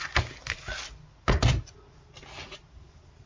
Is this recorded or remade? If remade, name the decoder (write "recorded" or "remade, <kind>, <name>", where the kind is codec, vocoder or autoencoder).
recorded